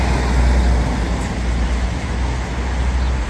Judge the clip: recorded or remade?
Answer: recorded